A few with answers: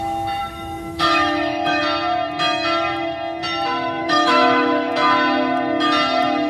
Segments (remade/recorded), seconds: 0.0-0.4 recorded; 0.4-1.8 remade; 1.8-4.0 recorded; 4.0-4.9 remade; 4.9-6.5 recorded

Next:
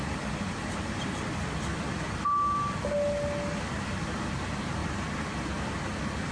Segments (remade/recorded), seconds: 0.0-6.3 recorded

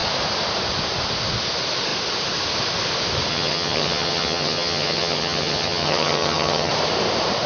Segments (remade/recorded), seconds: 0.0-3.3 recorded; 3.3-6.7 remade; 6.7-7.5 recorded

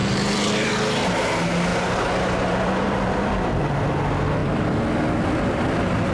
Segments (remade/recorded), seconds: 0.0-0.7 remade; 0.7-1.7 recorded; 1.7-3.9 remade; 3.9-4.4 recorded; 4.4-5.0 remade; 5.0-6.1 recorded

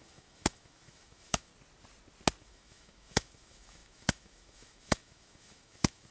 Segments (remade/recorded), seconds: 0.0-1.5 remade; 1.5-2.4 recorded; 2.4-6.1 remade